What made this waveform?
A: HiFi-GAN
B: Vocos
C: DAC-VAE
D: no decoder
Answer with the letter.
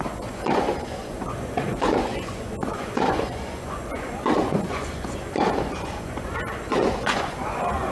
B